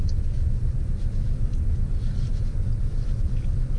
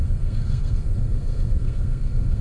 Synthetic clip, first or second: second